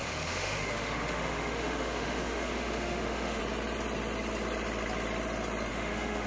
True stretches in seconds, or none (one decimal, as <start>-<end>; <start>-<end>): 3.4-5.7